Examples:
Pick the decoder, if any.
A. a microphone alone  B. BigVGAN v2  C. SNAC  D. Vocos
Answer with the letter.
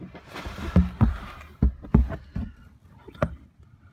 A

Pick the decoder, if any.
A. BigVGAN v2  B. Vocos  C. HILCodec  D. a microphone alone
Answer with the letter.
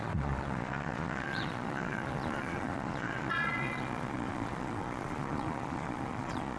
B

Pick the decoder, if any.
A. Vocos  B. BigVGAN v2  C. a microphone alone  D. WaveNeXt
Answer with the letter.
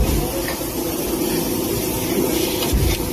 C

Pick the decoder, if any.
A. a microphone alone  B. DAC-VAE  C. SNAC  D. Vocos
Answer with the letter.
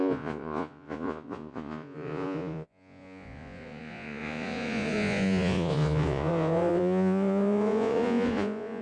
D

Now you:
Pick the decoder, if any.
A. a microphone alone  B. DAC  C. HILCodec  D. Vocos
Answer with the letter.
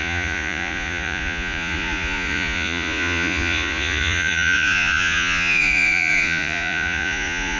D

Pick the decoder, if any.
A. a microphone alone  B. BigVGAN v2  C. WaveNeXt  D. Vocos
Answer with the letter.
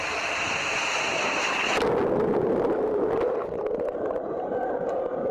A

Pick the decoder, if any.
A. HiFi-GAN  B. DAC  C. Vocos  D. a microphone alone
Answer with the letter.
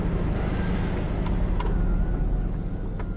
D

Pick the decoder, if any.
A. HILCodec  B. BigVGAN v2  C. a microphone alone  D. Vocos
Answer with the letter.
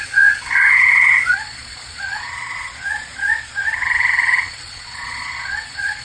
D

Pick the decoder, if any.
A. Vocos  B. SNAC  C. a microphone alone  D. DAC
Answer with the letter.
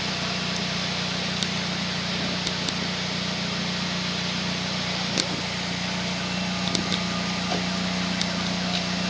C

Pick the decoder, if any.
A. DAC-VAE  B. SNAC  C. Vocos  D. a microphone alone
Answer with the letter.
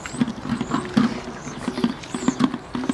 D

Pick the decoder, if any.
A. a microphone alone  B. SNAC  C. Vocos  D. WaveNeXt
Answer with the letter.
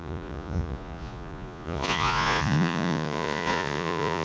C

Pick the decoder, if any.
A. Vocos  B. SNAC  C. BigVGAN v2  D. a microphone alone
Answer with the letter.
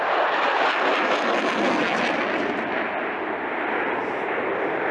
D